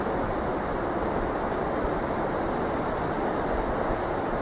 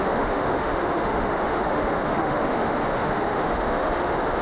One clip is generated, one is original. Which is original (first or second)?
first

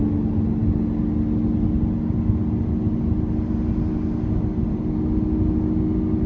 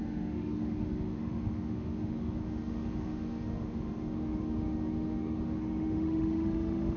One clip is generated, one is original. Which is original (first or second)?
first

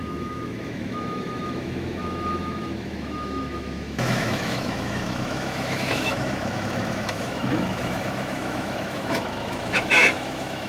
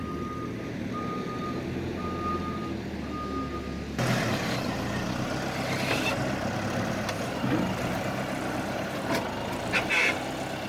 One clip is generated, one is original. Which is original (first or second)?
second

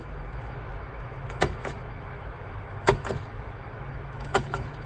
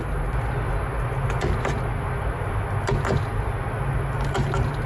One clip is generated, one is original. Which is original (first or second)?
second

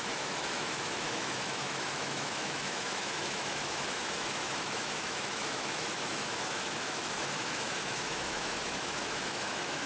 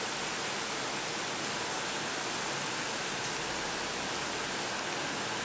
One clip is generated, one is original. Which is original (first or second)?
second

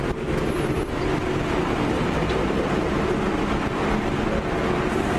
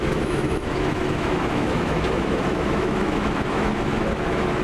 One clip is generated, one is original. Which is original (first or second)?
first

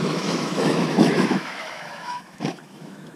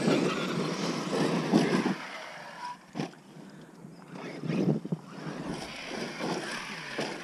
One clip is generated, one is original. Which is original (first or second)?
second